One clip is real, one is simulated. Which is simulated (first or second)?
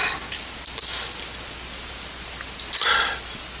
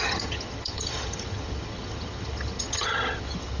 second